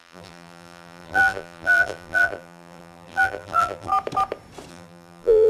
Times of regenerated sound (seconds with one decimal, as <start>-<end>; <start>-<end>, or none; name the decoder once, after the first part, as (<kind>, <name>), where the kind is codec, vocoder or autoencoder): 0.0-3.9 (vocoder, BigVGAN v2); 4.7-5.5